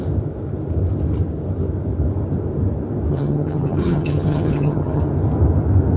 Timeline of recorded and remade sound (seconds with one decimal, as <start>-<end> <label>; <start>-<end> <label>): 0.0-3.1 recorded; 3.1-5.0 remade; 5.0-6.0 recorded